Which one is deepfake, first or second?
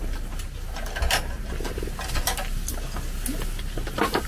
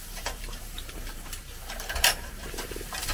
second